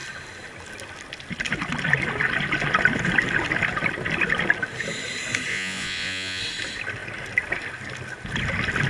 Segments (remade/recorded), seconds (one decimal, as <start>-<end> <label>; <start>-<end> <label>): 0.0-5.5 recorded; 5.5-6.4 remade; 6.4-8.9 recorded